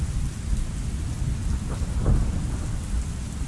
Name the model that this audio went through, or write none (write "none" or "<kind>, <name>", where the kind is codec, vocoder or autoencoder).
none